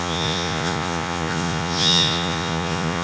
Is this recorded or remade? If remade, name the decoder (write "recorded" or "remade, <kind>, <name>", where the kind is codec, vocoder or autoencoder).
remade, vocoder, Vocos